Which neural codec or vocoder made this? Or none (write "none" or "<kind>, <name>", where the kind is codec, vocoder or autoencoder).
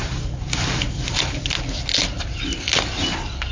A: none